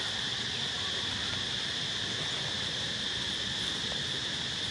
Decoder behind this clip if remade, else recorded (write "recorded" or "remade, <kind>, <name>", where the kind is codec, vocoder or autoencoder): remade, vocoder, BigVGAN v2